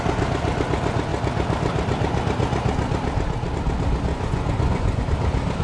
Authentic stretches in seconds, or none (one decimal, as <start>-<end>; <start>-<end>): 0.0-4.1; 5.0-5.6